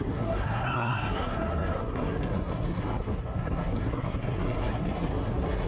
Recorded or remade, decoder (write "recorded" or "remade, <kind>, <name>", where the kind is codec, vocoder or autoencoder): remade, codec, SNAC